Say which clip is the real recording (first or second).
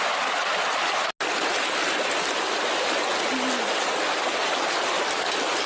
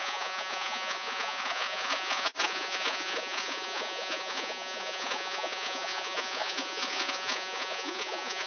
first